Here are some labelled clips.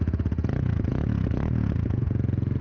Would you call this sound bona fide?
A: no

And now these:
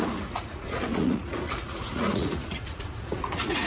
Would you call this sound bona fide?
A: no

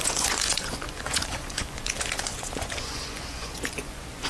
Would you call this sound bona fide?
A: no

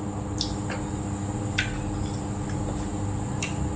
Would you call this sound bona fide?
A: yes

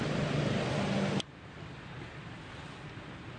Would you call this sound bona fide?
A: yes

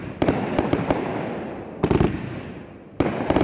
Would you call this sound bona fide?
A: yes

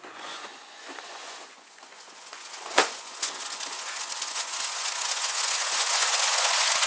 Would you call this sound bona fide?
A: no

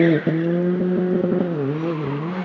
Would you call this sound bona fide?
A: yes